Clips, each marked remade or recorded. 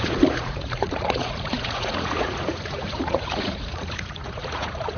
remade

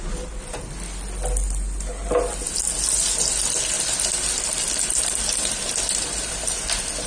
recorded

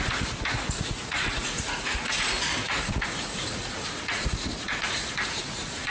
remade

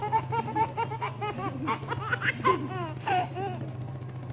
recorded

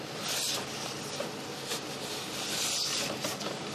recorded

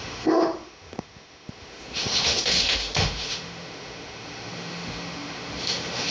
remade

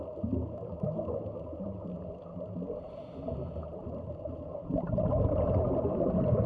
recorded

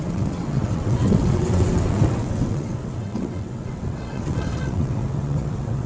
remade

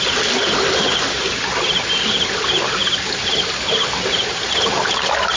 recorded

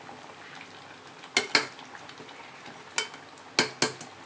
recorded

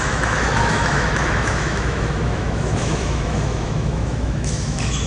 remade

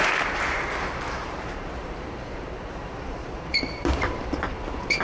remade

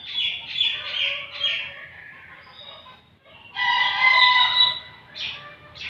recorded